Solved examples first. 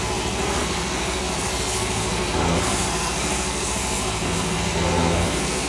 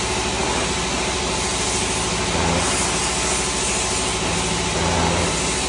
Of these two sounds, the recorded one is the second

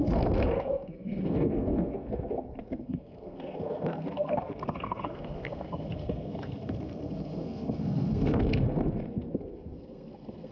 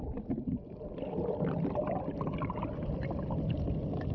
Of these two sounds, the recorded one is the second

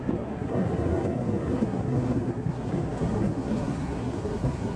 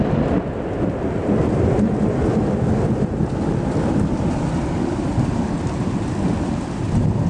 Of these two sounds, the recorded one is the second